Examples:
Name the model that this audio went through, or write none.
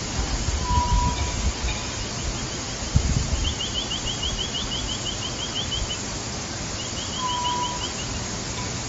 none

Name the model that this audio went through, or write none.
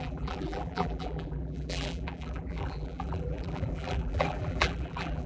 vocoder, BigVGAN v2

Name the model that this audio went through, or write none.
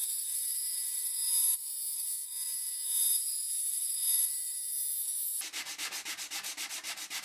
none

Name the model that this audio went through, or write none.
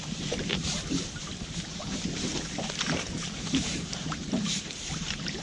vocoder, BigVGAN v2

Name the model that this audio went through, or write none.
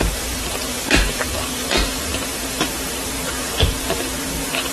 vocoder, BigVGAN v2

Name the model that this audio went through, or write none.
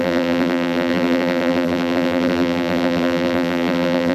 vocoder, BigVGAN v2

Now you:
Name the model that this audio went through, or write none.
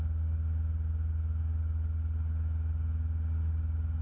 none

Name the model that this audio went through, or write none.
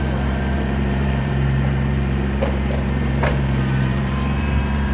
vocoder, BigVGAN v2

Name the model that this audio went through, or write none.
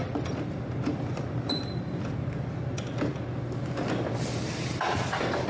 none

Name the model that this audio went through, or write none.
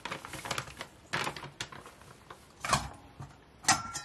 none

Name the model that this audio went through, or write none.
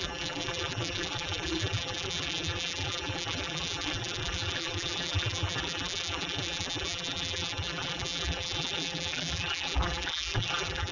vocoder, BigVGAN v2